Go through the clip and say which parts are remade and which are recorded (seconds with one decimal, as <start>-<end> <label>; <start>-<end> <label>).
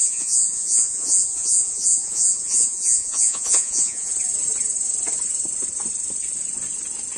0.0-4.1 remade; 4.1-7.2 recorded